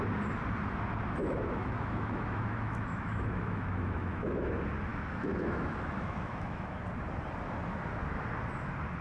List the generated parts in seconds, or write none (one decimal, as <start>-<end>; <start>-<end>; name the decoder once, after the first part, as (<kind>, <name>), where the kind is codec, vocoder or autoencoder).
1.2-4.4 (autoencoder, DAC-VAE); 4.9-6.8